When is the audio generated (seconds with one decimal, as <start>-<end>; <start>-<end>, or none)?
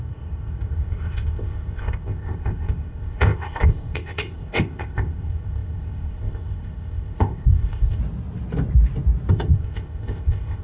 0.0-8.0; 9.3-10.6